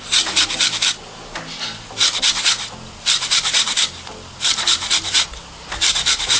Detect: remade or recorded recorded